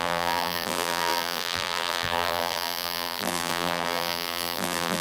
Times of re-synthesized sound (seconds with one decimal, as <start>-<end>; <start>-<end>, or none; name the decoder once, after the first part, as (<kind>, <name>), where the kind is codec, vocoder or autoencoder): 0.0-5.0 (vocoder, BigVGAN v2)